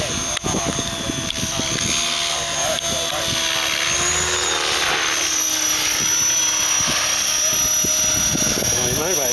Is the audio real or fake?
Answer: real